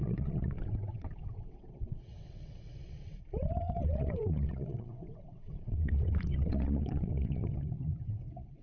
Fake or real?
fake